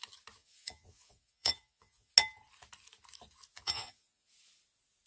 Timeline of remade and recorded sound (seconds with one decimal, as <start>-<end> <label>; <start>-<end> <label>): 0.0-0.4 recorded; 0.4-2.1 remade; 2.1-3.5 recorded; 3.5-4.3 remade; 4.3-5.1 recorded